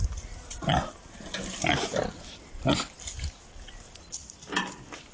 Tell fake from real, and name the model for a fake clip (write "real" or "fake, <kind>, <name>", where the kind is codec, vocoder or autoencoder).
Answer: real